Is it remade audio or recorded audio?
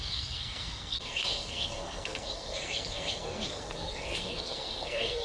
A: remade